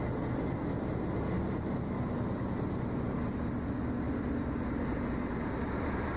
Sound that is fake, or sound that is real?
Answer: real